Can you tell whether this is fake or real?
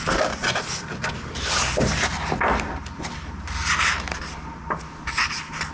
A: real